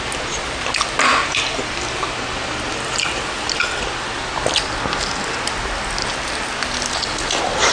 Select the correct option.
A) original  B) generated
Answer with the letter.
A